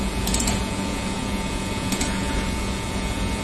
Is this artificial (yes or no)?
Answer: yes